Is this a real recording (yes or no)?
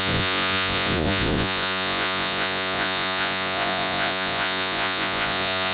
no